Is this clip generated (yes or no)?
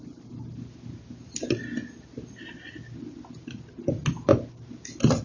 no